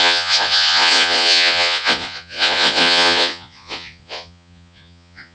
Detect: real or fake fake